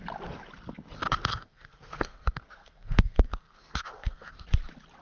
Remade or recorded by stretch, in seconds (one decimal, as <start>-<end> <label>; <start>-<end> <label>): 0.0-1.3 recorded; 1.3-4.3 remade; 4.3-5.0 recorded

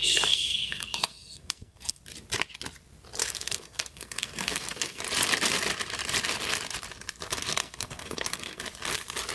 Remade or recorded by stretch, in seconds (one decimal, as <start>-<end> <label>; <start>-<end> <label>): 0.0-2.0 remade; 2.0-3.2 recorded; 3.2-5.0 remade; 5.0-7.6 recorded; 7.6-8.6 remade; 8.6-9.3 recorded

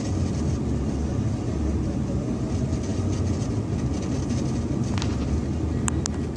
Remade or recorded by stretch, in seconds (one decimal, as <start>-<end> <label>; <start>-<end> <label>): 0.0-6.4 recorded

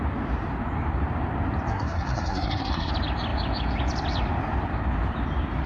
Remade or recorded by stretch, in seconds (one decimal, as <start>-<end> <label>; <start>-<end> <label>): 0.0-1.7 recorded; 1.7-2.9 remade; 2.9-5.7 recorded

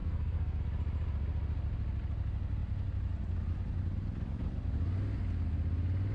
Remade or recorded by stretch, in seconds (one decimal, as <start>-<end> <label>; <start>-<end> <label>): 0.0-0.6 remade; 0.6-6.1 recorded

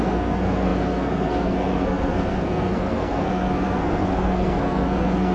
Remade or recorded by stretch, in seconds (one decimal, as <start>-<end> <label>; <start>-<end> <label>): 0.0-5.3 remade

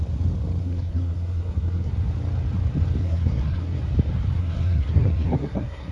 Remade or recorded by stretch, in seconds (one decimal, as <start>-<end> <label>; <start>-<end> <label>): 0.0-0.6 recorded; 0.6-1.9 remade; 1.9-3.0 recorded; 3.0-3.8 remade; 3.8-4.4 recorded; 4.4-5.9 remade